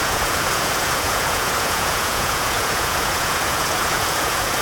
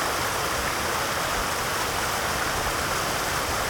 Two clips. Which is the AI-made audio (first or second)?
first